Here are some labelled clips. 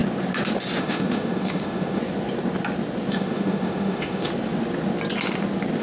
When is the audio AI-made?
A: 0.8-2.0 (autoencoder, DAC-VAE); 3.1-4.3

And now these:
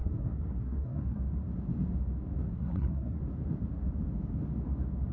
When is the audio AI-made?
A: 0.0-1.2 (codec, SNAC); 2.5-3.2

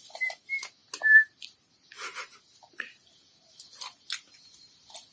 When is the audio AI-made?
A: none

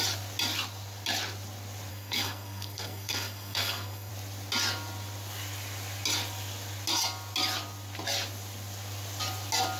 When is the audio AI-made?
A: 1.9-4.1 (codec, SNAC)

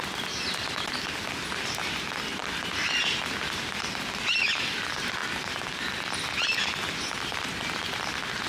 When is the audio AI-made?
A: none